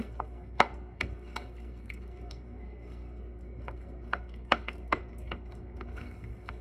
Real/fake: fake